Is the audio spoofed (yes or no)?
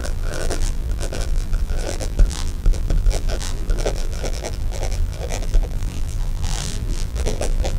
yes